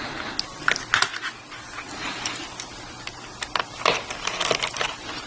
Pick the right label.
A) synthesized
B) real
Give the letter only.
B